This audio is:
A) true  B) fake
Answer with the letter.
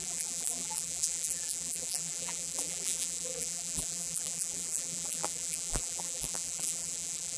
B